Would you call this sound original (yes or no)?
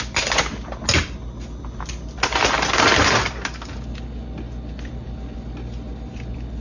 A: yes